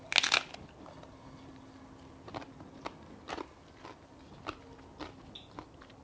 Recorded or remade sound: recorded